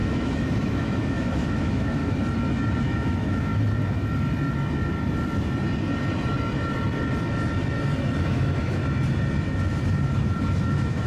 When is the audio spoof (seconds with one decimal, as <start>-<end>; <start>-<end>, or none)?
0.0-2.0; 2.8-3.5; 8.2-8.8; 10.6-11.1